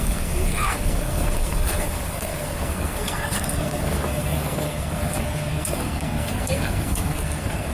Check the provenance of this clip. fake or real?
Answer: fake